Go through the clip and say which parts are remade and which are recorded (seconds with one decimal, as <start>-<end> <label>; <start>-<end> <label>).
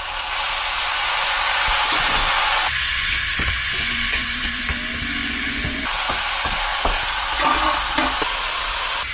0.0-0.8 recorded; 0.8-4.6 remade; 4.6-5.2 recorded; 5.2-6.2 remade; 6.2-9.1 recorded